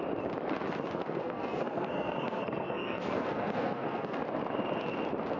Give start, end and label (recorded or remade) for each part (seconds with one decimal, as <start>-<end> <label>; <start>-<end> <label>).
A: 0.0-1.0 recorded; 1.0-4.2 remade; 4.2-5.4 recorded